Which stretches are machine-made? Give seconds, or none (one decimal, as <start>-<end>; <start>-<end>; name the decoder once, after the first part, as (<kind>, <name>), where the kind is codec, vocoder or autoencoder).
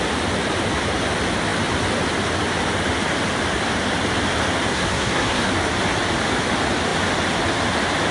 4.7-5.5 (codec, SNAC)